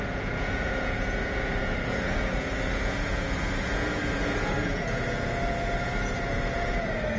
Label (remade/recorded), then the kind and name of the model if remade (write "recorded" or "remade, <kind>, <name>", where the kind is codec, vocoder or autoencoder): remade, vocoder, Vocos